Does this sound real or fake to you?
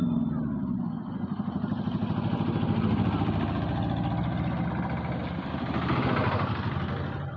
real